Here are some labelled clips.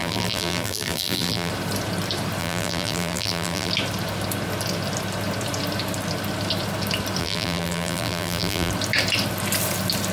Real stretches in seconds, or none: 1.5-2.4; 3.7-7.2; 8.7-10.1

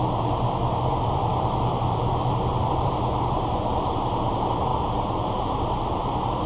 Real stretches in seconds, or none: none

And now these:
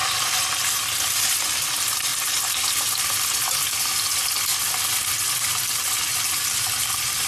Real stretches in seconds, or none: 0.0-7.3

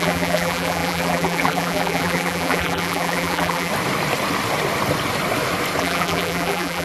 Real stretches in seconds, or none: 3.7-5.8

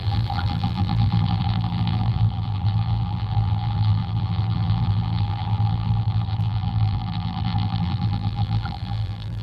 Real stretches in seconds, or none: none

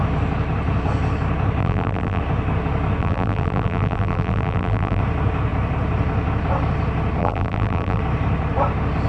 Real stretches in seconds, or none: 0.0-1.6; 2.2-3.0; 5.0-7.2; 8.0-9.1